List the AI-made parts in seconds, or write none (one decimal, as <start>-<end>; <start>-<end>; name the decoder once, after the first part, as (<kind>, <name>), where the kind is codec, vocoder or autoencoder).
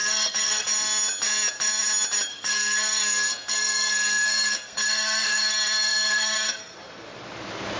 0.0-0.7 (codec, SNAC); 2.3-6.7